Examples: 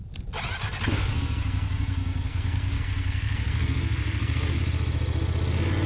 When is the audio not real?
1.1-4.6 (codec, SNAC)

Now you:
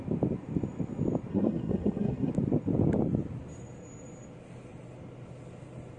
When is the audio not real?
1.3-2.3 (codec, SNAC)

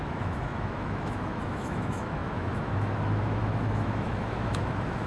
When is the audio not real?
0.0-5.1 (autoencoder, DAC-VAE)

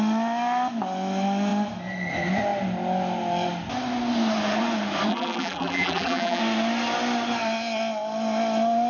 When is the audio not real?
5.1-6.4 (vocoder, BigVGAN v2)

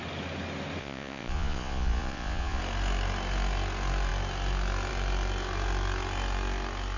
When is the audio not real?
0.8-2.6 (vocoder, Vocos)

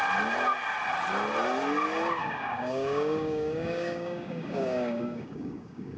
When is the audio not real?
2.2-6.0 (codec, DAC)

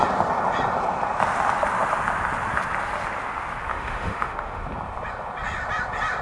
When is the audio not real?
3.7-4.6 (autoencoder, DAC-VAE)

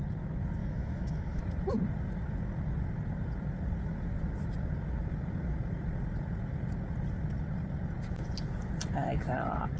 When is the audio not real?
0.6-1.4 (autoencoder, DAC-VAE)